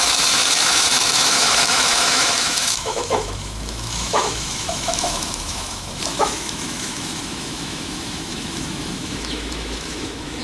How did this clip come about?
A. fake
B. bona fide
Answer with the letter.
A